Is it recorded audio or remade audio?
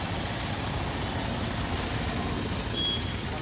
recorded